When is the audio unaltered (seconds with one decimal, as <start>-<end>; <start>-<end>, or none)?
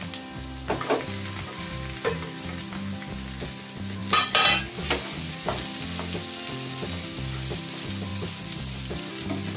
0.0-4.0; 4.6-8.1; 9.1-9.6